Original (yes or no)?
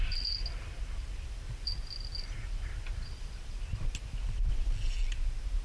yes